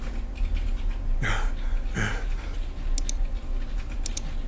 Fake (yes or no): no